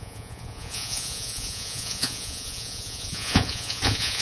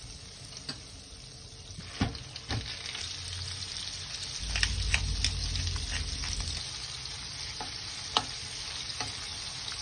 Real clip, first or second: second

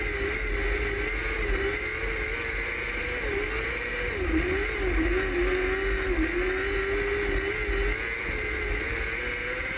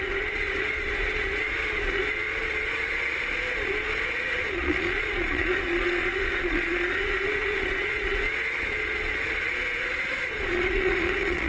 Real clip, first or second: first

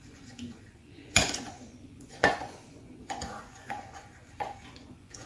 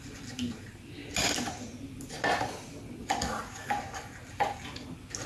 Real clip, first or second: second